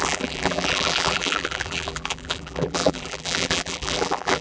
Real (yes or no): no